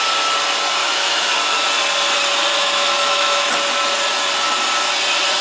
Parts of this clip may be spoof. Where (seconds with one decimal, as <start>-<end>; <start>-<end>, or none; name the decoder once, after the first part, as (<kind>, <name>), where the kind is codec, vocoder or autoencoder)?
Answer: 0.8-1.3 (autoencoder, DAC-VAE); 2.5-3.5